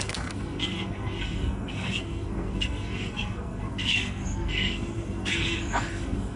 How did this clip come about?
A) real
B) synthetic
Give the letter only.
B